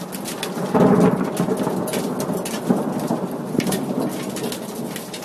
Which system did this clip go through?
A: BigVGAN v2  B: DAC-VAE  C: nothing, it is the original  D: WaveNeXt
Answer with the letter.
C